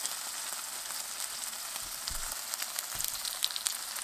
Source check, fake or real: real